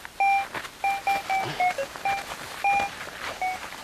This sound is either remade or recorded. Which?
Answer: recorded